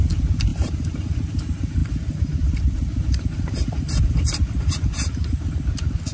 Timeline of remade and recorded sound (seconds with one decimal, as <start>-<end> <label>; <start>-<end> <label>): 0.0-0.5 recorded; 0.5-1.0 remade; 1.0-1.8 recorded; 1.8-5.5 remade; 5.5-6.1 recorded